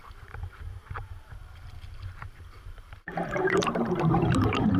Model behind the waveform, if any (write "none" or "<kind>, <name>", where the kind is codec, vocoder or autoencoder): vocoder, BigVGAN v2